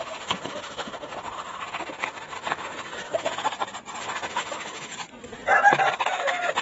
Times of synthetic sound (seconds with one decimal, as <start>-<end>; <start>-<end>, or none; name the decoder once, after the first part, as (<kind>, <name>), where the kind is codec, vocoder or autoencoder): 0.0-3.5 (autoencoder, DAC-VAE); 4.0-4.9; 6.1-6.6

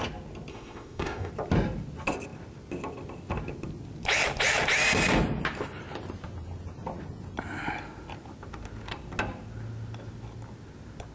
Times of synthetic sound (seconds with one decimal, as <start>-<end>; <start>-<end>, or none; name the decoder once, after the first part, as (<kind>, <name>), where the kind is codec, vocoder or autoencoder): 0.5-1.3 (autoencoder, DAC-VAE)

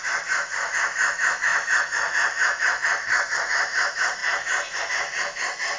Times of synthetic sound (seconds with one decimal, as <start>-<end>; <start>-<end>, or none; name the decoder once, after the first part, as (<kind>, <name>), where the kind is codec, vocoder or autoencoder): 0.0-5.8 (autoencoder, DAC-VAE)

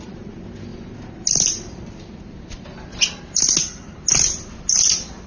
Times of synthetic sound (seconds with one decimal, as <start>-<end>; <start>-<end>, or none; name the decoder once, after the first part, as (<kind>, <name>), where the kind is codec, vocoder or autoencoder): none

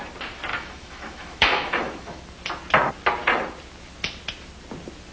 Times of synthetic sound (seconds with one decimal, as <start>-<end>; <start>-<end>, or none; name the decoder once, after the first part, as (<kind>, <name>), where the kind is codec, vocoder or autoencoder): 0.5-2.2 (autoencoder, DAC-VAE)

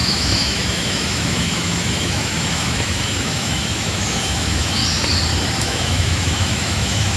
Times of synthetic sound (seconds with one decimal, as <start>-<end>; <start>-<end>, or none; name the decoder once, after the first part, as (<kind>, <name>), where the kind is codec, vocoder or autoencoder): 0.0-4.8 (autoencoder, DAC-VAE); 5.6-7.2

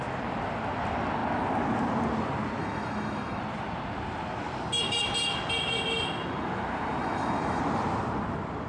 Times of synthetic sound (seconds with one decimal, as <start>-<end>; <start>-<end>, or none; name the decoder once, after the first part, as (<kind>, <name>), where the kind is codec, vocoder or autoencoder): 2.6-3.4 (autoencoder, DAC-VAE); 7.0-7.6